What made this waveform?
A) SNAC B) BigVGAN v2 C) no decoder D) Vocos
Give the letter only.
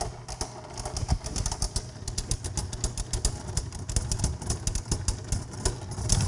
C